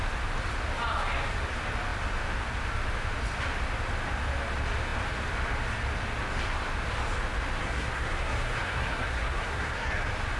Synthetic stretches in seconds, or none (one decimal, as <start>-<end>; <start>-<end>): 7.6-9.9